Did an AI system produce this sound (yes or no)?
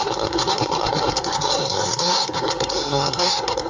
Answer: yes